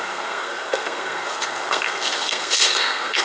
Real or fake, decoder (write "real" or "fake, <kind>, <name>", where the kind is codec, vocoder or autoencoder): fake, codec, SNAC